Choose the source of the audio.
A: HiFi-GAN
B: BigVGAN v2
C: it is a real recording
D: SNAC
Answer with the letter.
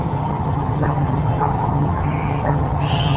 A